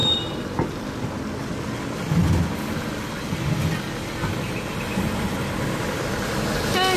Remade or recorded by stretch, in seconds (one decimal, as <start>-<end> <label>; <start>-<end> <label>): 0.0-7.0 recorded